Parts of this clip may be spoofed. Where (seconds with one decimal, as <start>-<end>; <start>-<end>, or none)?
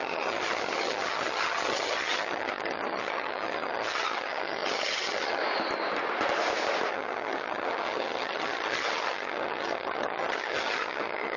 0.0-5.4; 6.9-11.4